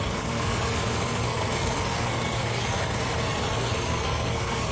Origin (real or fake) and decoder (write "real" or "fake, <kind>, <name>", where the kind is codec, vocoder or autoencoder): fake, codec, SNAC